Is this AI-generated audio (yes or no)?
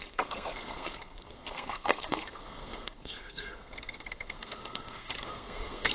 yes